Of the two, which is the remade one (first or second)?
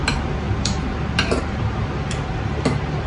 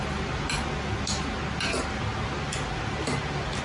first